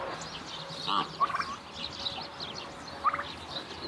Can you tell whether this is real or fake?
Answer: real